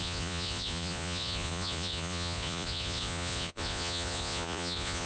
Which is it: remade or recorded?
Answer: remade